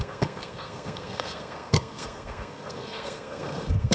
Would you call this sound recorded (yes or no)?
no